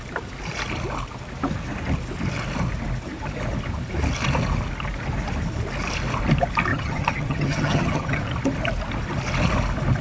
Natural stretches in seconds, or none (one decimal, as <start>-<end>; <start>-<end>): 0.0-6.7; 8.2-10.0

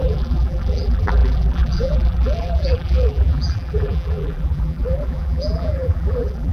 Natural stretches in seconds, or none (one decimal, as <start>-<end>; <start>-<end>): none

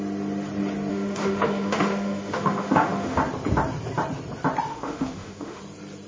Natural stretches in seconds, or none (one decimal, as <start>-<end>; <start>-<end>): 0.0-0.9; 3.2-4.7; 5.6-6.1

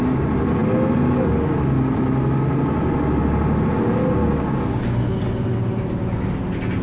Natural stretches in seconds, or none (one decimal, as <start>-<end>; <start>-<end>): 0.0-4.2; 4.8-6.8